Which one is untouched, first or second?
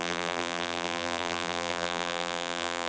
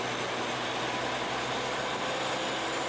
second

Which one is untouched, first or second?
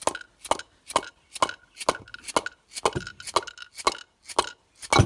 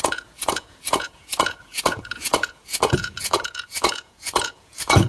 first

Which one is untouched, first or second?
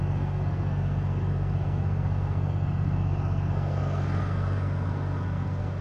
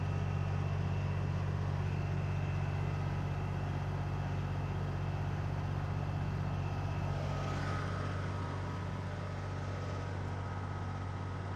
second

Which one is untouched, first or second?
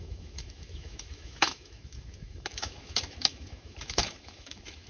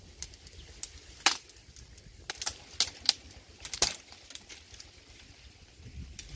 second